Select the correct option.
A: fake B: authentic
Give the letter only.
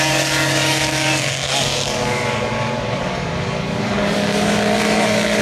A